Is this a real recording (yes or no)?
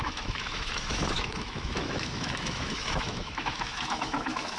no